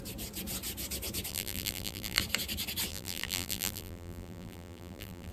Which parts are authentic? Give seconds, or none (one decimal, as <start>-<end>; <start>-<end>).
0.0-1.3; 2.2-2.9